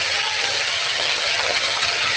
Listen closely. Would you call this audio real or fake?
fake